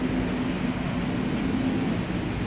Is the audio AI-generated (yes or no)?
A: no